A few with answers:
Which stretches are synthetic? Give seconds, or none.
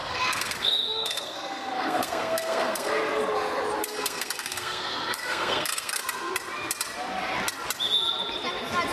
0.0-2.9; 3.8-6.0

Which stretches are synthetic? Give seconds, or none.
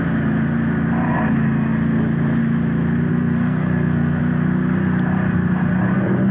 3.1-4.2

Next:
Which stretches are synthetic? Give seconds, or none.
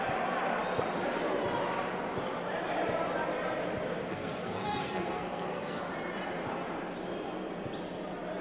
4.0-5.8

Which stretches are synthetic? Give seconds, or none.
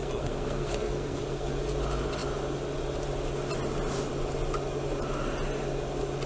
0.0-1.5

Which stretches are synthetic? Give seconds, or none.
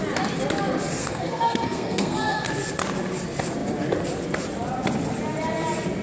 1.0-2.5